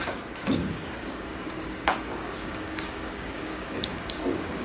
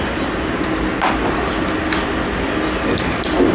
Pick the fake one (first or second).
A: first